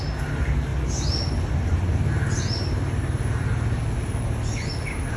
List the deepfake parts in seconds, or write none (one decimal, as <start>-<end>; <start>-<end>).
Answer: none